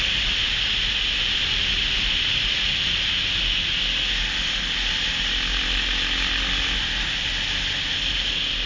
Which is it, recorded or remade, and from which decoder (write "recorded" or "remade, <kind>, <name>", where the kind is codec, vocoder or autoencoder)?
recorded